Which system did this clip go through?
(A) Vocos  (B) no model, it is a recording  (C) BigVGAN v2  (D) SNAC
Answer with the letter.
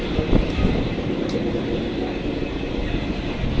B